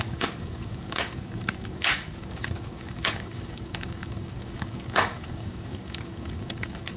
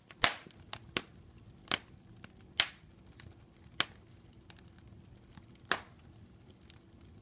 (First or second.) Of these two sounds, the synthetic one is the first